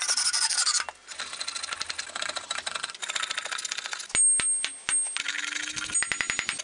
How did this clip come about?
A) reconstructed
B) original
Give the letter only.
B